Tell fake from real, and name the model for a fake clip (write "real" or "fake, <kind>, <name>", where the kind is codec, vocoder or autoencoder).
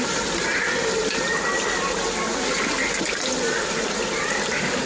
real